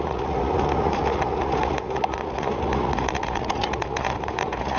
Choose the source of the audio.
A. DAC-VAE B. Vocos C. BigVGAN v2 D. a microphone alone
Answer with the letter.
B